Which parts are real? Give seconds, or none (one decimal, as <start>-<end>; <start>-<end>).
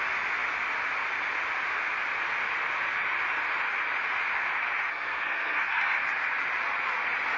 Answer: 0.0-4.9; 6.0-7.4